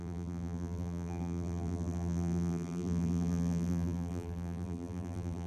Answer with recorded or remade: remade